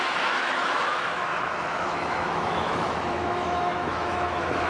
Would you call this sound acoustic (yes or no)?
no